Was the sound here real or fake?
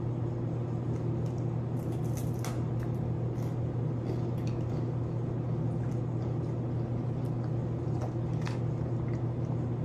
real